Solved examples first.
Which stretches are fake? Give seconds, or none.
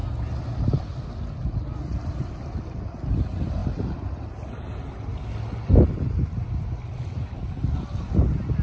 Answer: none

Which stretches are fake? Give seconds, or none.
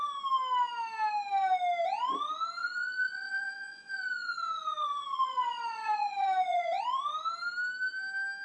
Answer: 2.6-6.8 (vocoder, Vocos)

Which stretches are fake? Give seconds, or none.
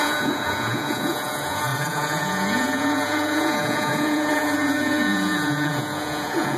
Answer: 0.0-6.6 (vocoder, Vocos)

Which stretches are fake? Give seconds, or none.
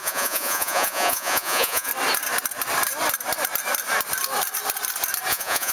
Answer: 0.0-1.9 (vocoder, Vocos); 5.3-5.7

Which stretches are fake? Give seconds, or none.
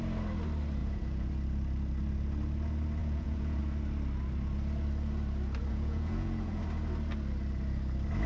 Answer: 0.8-1.3 (vocoder, Vocos); 3.0-3.6; 5.7-6.6